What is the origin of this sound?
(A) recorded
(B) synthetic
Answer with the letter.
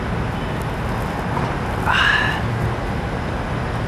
A